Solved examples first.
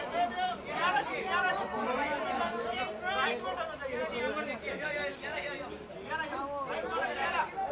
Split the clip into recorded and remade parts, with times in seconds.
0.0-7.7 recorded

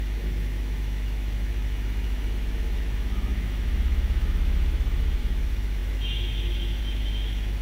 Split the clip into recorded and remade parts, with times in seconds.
0.0-7.6 remade

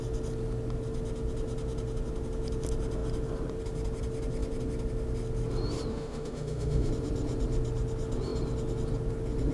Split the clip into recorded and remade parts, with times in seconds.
0.0-5.9 recorded; 5.9-6.9 remade; 6.9-9.5 recorded

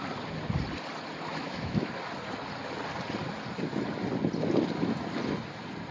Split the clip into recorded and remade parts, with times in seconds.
0.0-1.3 recorded; 1.3-1.9 remade; 1.9-5.9 recorded

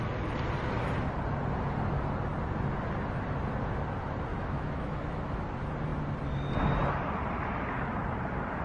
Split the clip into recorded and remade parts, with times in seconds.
0.0-4.3 recorded; 4.3-5.5 remade; 5.5-8.6 recorded